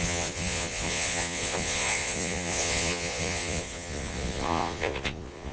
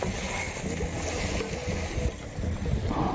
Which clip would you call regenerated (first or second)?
first